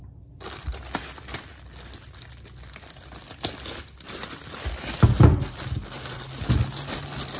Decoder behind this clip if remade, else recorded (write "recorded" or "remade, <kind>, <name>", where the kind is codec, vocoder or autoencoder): recorded